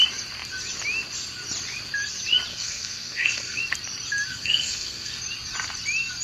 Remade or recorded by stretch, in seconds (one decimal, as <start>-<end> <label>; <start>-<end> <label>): 0.0-2.5 recorded; 2.5-3.6 remade; 3.6-4.3 recorded; 4.3-5.2 remade; 5.2-6.2 recorded